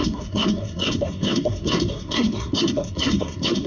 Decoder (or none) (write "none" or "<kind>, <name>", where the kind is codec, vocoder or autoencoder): codec, SNAC